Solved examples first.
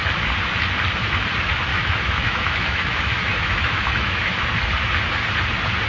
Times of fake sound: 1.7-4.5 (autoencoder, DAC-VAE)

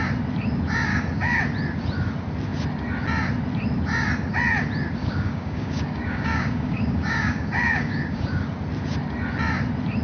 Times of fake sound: 0.9-1.4 (codec, DAC); 5.0-8.4